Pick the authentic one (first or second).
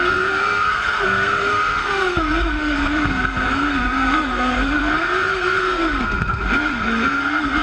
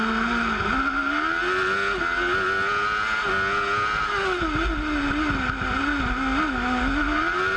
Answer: second